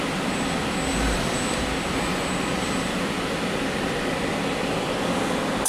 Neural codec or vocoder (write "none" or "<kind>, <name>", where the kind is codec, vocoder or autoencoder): none